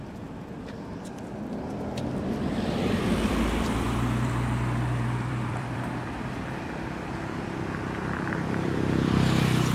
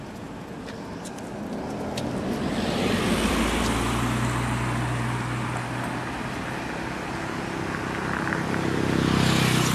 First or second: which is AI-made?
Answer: first